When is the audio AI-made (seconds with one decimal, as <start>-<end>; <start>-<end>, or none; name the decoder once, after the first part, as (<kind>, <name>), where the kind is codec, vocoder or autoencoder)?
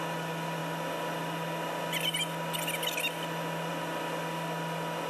none